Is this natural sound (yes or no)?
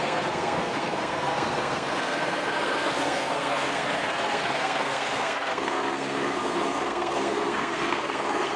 no